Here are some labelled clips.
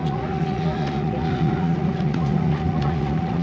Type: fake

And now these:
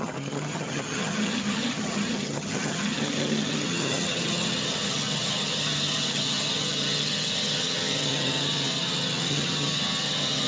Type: fake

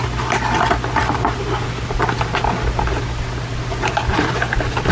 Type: real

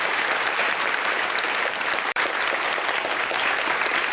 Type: fake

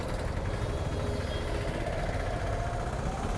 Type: real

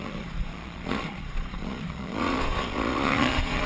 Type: fake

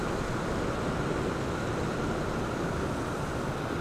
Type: real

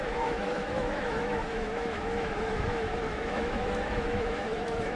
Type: fake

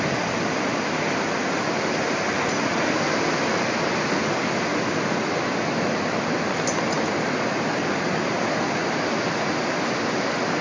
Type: real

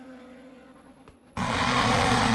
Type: fake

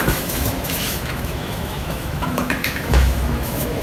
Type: fake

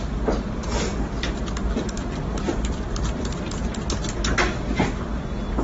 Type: real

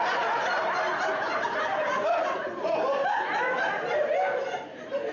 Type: real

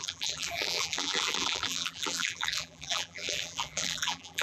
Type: fake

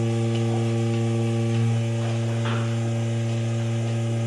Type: real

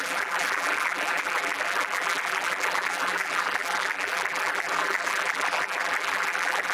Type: fake